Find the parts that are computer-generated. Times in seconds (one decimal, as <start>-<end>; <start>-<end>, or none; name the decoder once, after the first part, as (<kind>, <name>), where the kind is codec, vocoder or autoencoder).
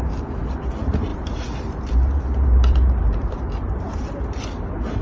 1.1-4.1 (vocoder, BigVGAN v2)